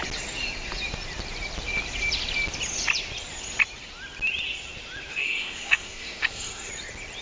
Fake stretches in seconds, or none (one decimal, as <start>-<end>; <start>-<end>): 5.1-6.7